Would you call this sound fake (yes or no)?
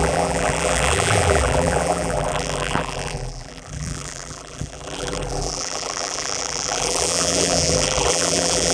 yes